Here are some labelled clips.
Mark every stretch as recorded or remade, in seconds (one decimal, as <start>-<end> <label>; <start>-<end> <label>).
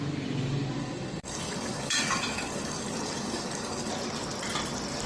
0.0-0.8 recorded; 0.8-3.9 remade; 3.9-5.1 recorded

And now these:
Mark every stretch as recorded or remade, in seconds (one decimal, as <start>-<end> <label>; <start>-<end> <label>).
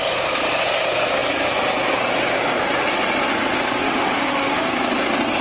0.0-3.8 recorded; 3.8-4.7 remade; 4.7-5.4 recorded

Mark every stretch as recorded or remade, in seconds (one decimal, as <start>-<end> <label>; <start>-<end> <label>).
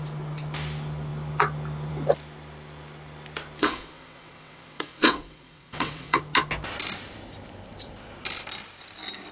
0.0-3.6 recorded; 3.6-6.2 remade; 6.2-9.3 recorded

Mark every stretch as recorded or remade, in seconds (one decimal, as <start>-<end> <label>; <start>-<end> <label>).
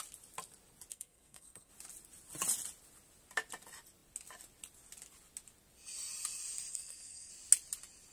0.0-0.9 recorded; 0.9-1.7 remade; 1.7-6.7 recorded; 6.7-7.3 remade; 7.3-8.1 recorded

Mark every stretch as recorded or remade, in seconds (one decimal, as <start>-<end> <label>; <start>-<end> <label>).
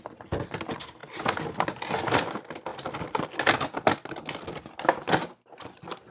0.0-6.1 recorded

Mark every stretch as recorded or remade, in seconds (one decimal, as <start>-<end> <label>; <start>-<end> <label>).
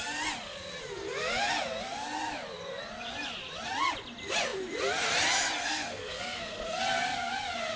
0.0-5.6 recorded; 5.6-6.8 remade; 6.8-7.8 recorded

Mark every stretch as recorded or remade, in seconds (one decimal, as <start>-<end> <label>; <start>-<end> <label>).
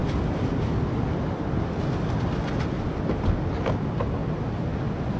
0.0-5.2 recorded